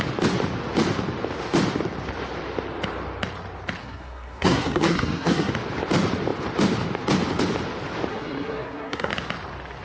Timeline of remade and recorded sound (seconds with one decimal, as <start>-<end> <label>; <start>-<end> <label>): 0.0-3.8 recorded; 3.8-5.5 remade; 5.5-8.1 recorded; 8.1-9.1 remade; 9.1-9.8 recorded